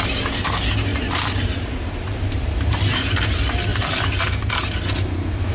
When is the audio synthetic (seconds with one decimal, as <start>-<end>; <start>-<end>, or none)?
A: 0.9-3.1; 3.7-4.5